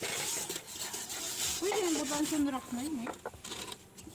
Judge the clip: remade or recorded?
recorded